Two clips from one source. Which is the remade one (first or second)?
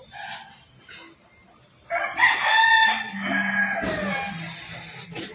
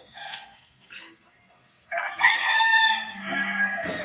second